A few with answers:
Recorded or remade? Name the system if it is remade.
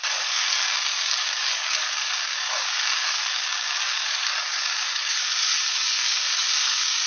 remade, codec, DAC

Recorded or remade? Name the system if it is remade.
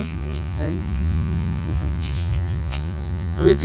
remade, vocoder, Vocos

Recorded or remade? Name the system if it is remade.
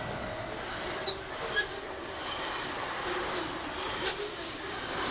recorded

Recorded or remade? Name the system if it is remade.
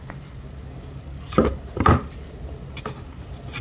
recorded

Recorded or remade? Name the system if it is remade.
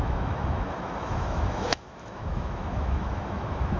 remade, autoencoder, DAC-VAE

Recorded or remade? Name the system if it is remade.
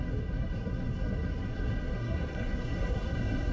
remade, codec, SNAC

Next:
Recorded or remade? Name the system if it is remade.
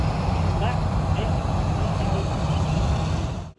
recorded